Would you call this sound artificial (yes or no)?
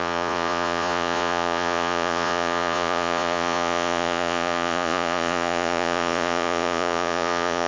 yes